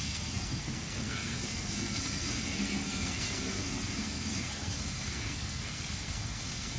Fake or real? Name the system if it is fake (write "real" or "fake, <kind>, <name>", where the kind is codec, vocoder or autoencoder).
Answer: fake, codec, SNAC